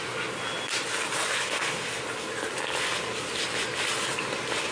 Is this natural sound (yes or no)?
yes